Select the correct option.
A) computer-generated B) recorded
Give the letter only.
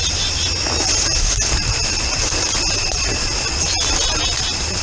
B